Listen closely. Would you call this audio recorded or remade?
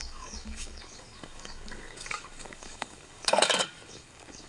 remade